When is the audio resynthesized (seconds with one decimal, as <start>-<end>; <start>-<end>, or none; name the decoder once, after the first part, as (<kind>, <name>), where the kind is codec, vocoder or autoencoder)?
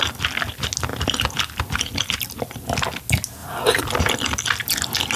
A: 0.9-3.0 (vocoder, BigVGAN v2); 3.4-4.0